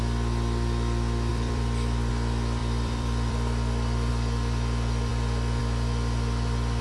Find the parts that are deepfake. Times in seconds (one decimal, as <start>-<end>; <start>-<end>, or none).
1.3-2.1; 2.6-4.1